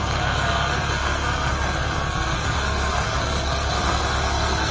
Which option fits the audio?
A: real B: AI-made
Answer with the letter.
B